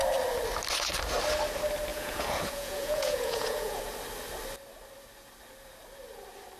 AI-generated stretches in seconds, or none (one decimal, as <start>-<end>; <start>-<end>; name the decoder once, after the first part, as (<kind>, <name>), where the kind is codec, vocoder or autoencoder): 1.9-3.8 (vocoder, Vocos)